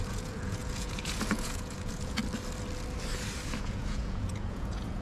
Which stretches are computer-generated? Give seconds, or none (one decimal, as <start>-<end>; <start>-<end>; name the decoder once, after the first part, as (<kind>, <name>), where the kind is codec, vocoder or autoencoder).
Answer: 0.0-2.2 (vocoder, Vocos); 3.6-5.0